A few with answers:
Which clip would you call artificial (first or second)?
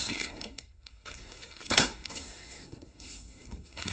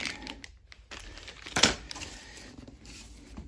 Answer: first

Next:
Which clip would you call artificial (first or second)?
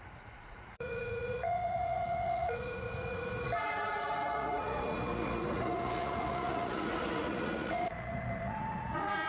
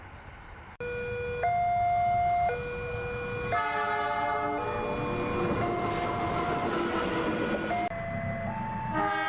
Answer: first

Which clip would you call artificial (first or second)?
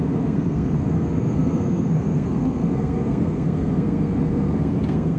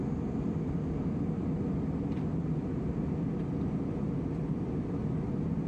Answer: first